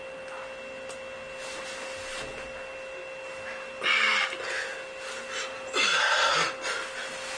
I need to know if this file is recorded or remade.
recorded